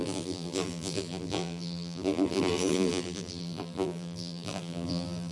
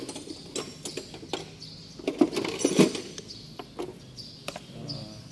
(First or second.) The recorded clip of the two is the second